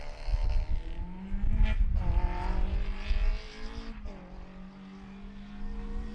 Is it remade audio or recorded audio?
recorded